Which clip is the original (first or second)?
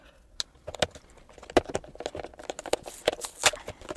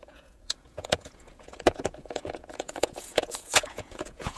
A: first